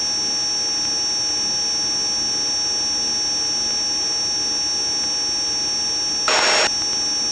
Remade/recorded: recorded